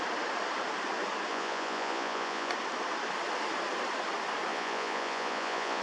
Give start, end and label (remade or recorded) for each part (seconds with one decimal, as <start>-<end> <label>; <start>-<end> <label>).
0.0-1.3 recorded; 1.3-2.5 remade; 2.5-4.5 recorded; 4.5-5.8 remade